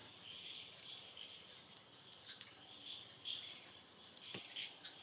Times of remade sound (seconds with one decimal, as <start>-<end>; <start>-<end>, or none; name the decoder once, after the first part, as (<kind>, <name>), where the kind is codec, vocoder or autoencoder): 0.0-0.8 (vocoder, Vocos)